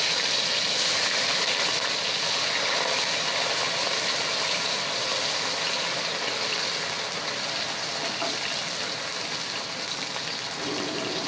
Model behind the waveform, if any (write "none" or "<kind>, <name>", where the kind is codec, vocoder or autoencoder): none